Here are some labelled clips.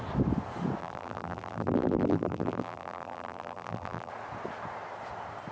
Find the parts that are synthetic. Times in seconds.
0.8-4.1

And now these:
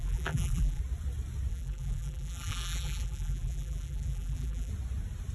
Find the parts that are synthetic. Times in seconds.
0.0-0.8; 1.5-4.7